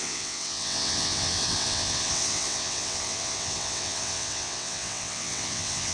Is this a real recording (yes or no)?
no